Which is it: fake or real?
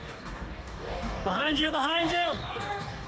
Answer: fake